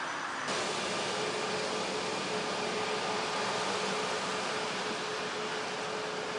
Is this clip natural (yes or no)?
yes